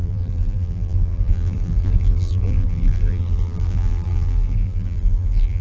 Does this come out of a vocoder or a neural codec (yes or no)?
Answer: yes